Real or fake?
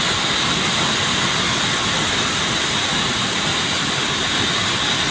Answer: real